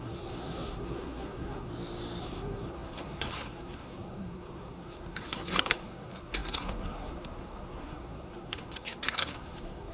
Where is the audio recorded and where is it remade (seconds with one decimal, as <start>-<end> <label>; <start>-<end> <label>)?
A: 0.0-1.7 remade; 1.7-2.2 recorded; 2.2-9.9 remade